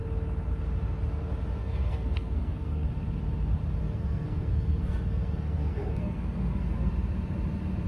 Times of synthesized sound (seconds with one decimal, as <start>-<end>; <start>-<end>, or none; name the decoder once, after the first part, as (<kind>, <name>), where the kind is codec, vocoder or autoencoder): 1.6-2.9 (codec, SNAC); 3.8-6.9

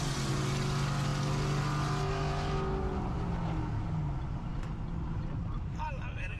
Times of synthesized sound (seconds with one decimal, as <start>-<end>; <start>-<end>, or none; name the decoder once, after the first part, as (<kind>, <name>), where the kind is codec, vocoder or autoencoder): none

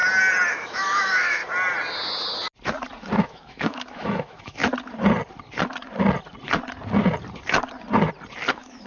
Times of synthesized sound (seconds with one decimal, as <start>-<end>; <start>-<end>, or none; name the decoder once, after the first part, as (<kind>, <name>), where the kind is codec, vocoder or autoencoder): 0.5-1.4 (autoencoder, DAC-VAE); 3.2-4.6; 8.5-8.9

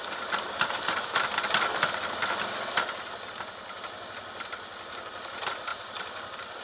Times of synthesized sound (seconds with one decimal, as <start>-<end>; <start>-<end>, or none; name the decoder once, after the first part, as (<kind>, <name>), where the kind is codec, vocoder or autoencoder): none

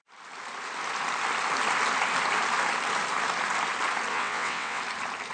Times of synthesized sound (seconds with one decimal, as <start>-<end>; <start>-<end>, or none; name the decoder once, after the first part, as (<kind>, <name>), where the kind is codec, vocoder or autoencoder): 4.1-4.8 (vocoder, WaveNeXt)

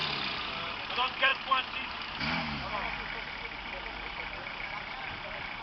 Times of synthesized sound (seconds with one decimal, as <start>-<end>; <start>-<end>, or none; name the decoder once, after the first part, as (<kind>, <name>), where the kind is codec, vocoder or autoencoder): none